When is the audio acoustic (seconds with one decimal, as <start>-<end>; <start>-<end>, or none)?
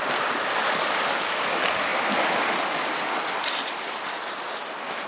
0.0-5.1